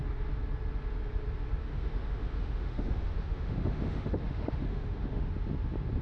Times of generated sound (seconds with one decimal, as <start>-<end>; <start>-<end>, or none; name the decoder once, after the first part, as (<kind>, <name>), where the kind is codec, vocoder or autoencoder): 1.7-5.3 (autoencoder, DAC-VAE)